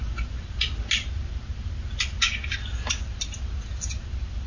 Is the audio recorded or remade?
recorded